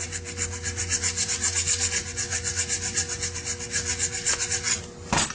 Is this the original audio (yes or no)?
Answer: yes